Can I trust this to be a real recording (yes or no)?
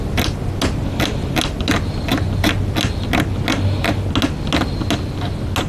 yes